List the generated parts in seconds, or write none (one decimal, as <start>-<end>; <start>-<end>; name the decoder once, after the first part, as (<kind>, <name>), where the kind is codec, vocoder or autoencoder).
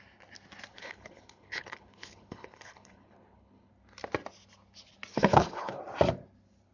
0.7-3.7 (codec, HILCodec); 5.1-5.8